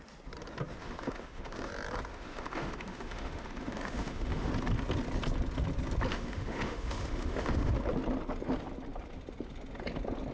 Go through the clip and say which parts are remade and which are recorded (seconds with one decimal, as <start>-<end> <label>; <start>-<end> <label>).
0.0-0.8 recorded; 0.8-1.7 remade; 1.7-2.1 recorded; 2.1-4.5 remade; 4.5-6.1 recorded; 6.1-7.7 remade; 7.7-10.3 recorded